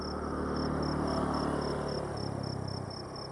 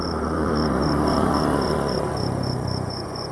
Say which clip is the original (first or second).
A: first